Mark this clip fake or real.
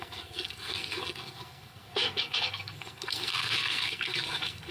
fake